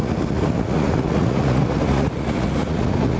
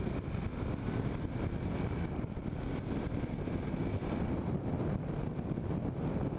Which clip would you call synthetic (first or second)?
first